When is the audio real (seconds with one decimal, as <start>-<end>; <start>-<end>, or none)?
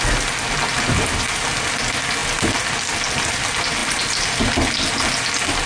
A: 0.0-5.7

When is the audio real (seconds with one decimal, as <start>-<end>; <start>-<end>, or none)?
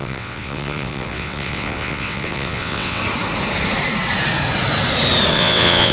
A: 3.0-5.3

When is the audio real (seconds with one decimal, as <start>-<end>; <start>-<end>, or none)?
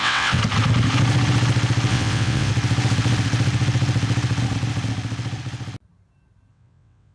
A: 0.4-1.9; 2.5-6.5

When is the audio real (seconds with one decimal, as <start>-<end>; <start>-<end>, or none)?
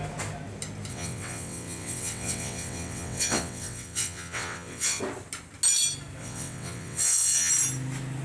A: 0.0-0.9; 5.0-6.2; 7.5-8.2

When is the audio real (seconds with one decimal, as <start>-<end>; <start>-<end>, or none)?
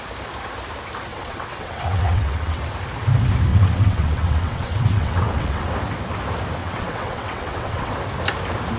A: 0.0-1.1; 2.6-3.5; 5.7-6.6; 7.9-8.8